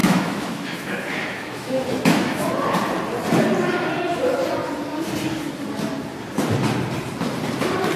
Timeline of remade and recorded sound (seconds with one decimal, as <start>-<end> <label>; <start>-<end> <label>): 0.0-2.4 remade; 2.4-8.0 recorded